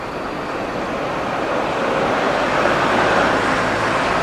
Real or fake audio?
real